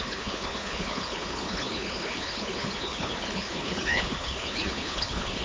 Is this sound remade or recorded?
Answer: remade